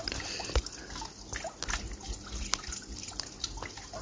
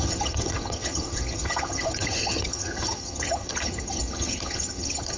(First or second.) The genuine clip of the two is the first